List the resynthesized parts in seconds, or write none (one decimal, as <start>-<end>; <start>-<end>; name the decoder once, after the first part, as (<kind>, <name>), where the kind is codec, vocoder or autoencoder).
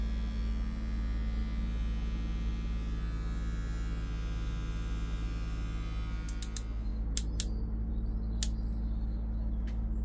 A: none